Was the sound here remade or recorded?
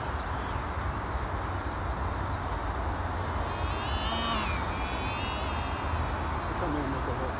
recorded